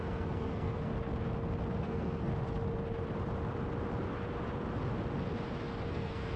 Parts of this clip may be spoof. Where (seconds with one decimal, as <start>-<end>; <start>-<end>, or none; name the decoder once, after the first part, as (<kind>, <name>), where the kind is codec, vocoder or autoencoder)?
0.0-0.9 (codec, SNAC); 1.8-2.3; 5.9-6.4